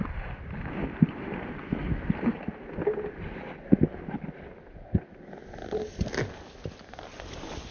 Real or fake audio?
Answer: real